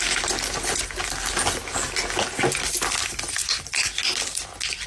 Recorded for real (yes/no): yes